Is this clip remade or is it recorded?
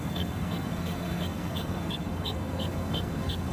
remade